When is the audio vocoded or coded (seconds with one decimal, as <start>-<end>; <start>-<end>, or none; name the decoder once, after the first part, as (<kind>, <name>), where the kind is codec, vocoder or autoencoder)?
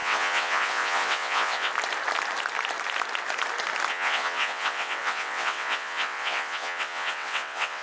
0.0-1.7 (vocoder, WaveNeXt); 3.9-7.8